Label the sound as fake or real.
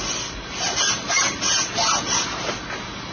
real